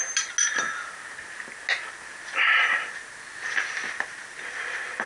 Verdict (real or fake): real